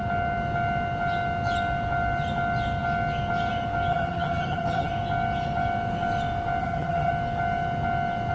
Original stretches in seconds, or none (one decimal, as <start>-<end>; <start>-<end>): 0.0-3.9; 4.9-6.6; 7.1-8.3

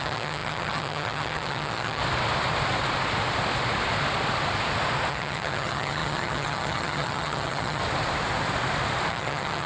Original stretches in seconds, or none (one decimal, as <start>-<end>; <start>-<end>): 2.0-5.1; 7.8-9.1

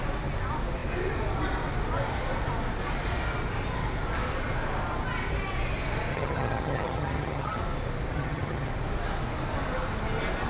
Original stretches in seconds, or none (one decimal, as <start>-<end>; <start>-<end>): 0.0-6.1; 7.6-8.1; 8.7-10.5

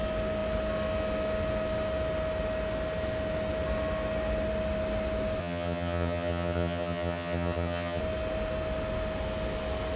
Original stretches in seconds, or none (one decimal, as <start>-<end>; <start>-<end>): 0.0-5.4; 8.0-10.0

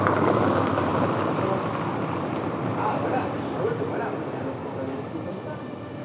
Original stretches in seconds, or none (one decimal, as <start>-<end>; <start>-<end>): 0.0-6.0

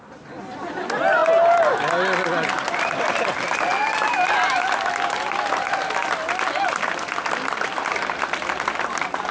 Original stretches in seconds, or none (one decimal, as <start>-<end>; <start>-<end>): 0.0-9.3